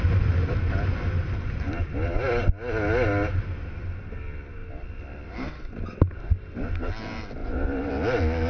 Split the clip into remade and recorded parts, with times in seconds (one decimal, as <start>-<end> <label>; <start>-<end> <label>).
0.0-7.4 recorded; 7.4-7.9 remade; 7.9-8.5 recorded